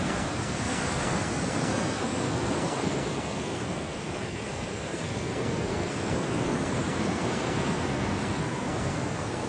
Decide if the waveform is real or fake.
fake